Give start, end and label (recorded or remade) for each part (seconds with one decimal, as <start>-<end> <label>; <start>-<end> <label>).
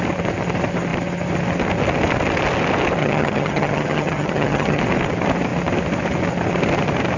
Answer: 0.0-3.0 recorded; 3.0-4.8 remade; 4.8-7.2 recorded